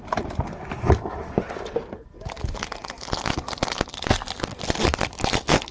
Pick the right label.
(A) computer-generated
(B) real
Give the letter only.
B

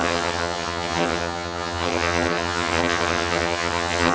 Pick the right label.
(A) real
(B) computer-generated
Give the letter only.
B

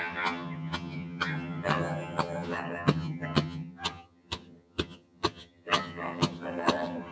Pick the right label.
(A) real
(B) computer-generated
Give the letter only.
B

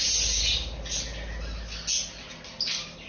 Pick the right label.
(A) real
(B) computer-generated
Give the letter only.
A